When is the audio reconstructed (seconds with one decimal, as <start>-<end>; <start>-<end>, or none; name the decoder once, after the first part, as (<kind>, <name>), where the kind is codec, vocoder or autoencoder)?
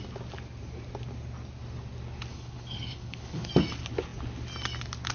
2.3-3.5 (codec, HILCodec)